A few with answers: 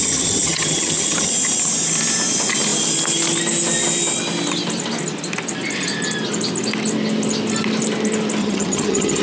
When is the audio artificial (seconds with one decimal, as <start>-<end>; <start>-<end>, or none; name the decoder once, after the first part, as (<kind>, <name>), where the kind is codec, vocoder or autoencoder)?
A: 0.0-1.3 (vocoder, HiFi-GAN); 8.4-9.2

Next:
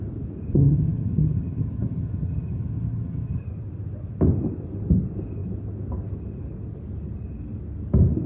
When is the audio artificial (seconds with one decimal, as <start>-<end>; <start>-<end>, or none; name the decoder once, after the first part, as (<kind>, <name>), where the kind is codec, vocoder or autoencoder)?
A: 0.5-3.4 (vocoder, HiFi-GAN)

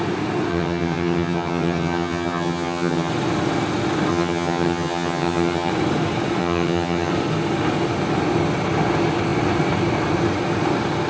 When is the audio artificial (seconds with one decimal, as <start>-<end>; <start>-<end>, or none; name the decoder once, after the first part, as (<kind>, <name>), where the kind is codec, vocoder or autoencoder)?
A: 0.5-3.1 (vocoder, HiFi-GAN); 4.1-5.7; 6.4-7.1

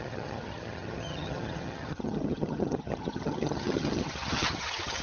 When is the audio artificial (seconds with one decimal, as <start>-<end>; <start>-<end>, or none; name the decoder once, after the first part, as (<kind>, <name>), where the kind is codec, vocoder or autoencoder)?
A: 0.0-5.0 (vocoder, HiFi-GAN)